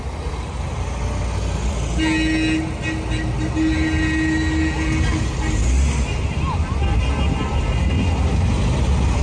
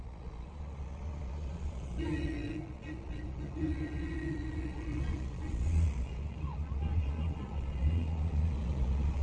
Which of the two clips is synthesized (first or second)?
second